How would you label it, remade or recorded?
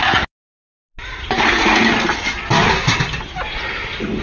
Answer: recorded